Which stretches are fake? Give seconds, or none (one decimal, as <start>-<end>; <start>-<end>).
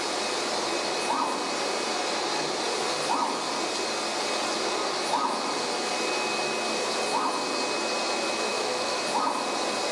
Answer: 8.5-9.0